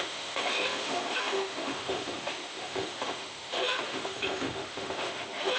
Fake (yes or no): yes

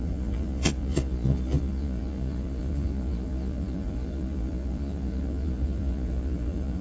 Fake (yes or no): yes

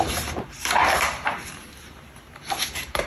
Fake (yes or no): yes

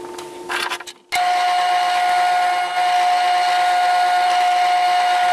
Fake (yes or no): no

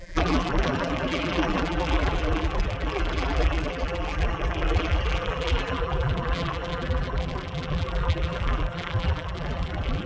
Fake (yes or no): yes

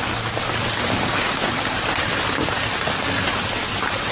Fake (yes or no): no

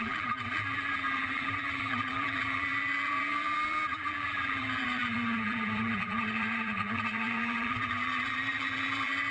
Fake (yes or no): yes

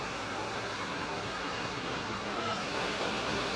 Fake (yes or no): yes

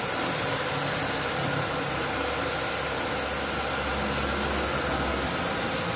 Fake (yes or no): no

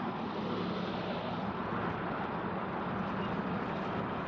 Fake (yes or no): no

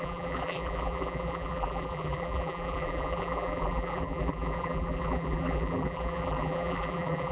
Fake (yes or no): yes